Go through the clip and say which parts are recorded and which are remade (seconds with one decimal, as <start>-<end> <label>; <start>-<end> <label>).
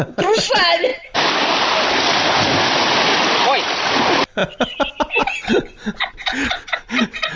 0.0-0.9 recorded; 0.9-1.4 remade; 1.4-4.4 recorded; 4.4-5.7 remade; 5.7-7.4 recorded